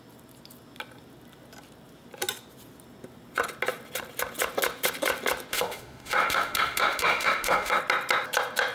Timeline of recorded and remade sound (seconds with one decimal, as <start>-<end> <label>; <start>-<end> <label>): 0.0-5.5 recorded; 5.5-7.8 remade; 7.8-8.7 recorded